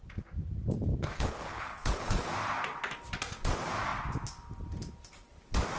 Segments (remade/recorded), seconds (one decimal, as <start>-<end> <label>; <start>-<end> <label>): 0.0-0.9 recorded; 0.9-2.3 remade; 2.3-5.8 recorded